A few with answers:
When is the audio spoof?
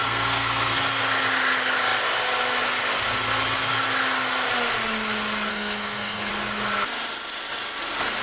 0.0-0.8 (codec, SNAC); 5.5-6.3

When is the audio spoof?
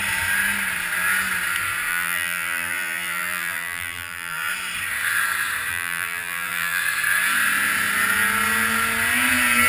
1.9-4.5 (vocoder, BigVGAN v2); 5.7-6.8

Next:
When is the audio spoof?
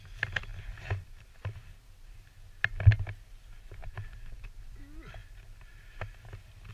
0.5-1.7 (vocoder, BigVGAN v2); 3.8-4.6